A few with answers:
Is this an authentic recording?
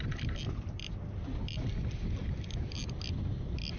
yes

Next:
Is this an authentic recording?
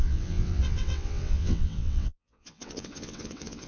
no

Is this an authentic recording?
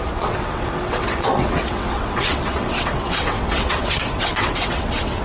no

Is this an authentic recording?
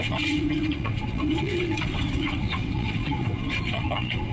no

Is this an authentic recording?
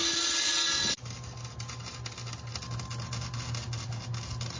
yes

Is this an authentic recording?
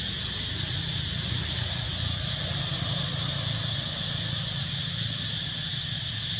yes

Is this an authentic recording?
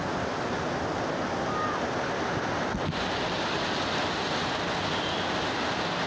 yes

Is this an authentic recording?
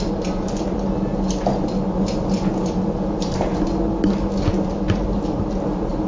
yes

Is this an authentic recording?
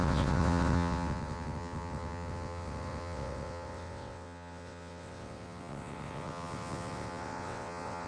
no